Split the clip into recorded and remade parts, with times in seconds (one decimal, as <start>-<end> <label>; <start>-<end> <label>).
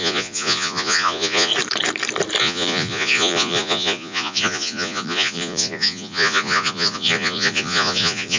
0.0-1.5 remade; 1.5-2.4 recorded; 2.4-8.4 remade